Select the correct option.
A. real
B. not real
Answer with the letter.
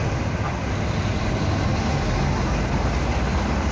A